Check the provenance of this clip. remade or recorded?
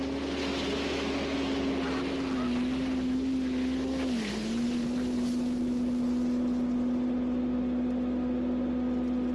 recorded